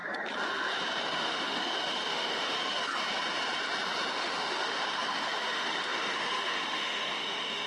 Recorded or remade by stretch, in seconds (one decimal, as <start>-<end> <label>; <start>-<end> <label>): 0.0-1.0 recorded; 1.0-2.9 remade; 2.9-4.1 recorded; 4.1-7.7 remade